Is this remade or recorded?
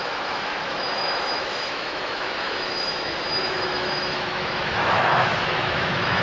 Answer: remade